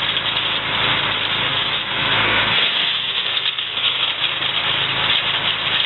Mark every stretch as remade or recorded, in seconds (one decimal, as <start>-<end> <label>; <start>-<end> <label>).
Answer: 0.0-1.5 recorded; 1.5-4.1 remade; 4.1-5.9 recorded